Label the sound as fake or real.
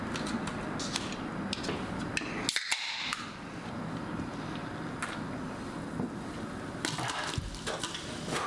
real